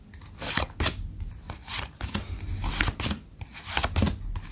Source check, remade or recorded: recorded